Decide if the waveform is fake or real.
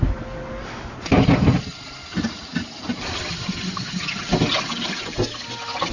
real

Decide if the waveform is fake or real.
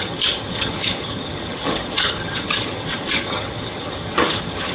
fake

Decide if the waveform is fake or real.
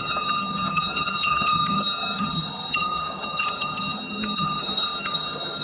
fake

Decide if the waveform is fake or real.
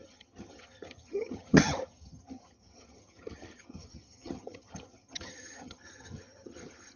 fake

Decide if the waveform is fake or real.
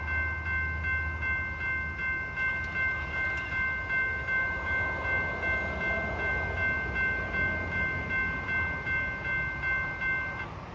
real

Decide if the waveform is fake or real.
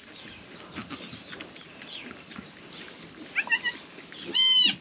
real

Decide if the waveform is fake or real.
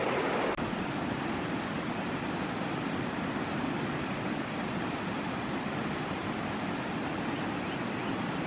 real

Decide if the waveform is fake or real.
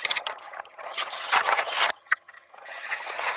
fake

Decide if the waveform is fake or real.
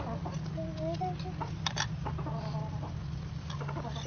real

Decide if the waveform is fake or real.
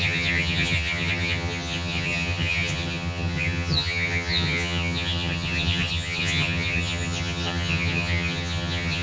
fake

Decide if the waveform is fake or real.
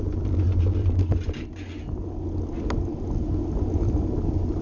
real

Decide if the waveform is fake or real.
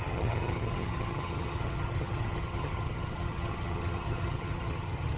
fake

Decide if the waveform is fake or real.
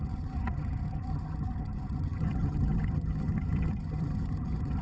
fake